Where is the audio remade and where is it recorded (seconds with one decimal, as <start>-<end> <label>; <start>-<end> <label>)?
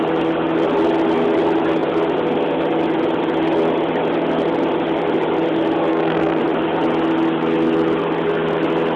0.0-5.9 recorded; 5.9-6.4 remade; 6.4-9.0 recorded